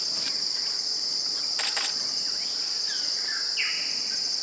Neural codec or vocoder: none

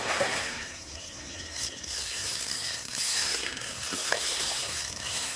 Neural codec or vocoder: codec, SNAC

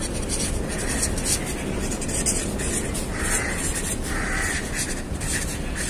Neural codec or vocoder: none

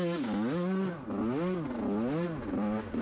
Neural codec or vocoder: none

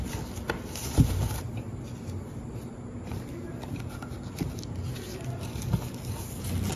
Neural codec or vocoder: none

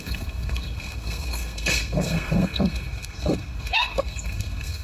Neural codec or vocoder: codec, SNAC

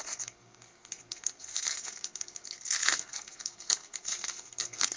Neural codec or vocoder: codec, SNAC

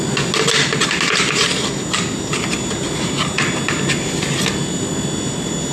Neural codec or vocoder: none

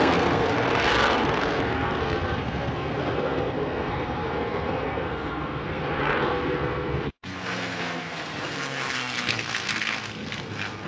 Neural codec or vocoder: codec, SNAC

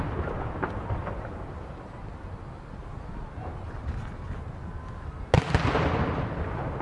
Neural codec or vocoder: none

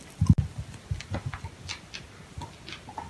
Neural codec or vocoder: none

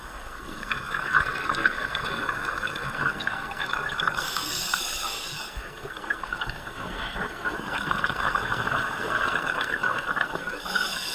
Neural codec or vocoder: codec, SNAC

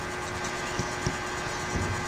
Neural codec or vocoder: none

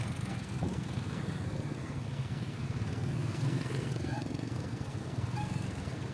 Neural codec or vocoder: codec, SNAC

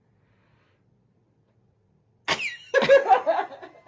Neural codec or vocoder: none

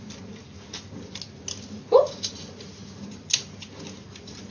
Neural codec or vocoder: none